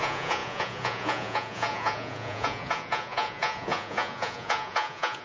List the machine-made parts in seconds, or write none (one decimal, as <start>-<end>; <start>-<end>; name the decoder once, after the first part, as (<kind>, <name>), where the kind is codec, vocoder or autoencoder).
0.0-5.2 (vocoder, Vocos)

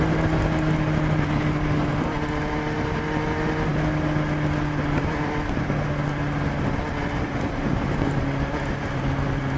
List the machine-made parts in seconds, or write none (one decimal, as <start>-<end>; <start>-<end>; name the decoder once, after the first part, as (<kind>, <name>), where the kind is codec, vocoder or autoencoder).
none

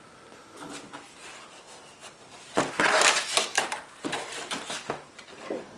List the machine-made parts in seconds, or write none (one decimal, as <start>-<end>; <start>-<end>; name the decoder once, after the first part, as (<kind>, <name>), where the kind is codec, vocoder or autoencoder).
3.5-5.8 (vocoder, BigVGAN v2)

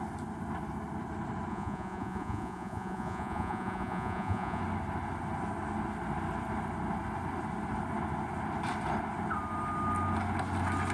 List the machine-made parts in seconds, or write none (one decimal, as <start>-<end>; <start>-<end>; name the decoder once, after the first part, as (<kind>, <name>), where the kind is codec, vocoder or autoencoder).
1.5-4.6 (vocoder, Vocos)